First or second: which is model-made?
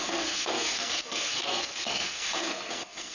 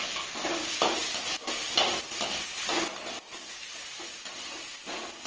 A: first